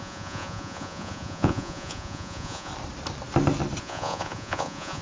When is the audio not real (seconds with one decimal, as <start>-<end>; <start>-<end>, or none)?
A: 0.0-2.7; 3.8-5.0